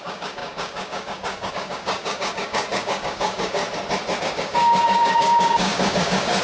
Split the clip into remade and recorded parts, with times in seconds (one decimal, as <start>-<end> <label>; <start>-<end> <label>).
0.0-3.6 remade; 3.6-4.2 recorded; 4.2-6.4 remade